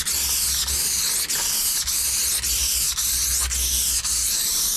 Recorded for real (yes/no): yes